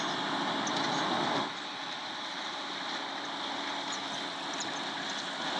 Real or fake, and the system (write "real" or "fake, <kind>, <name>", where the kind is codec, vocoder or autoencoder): real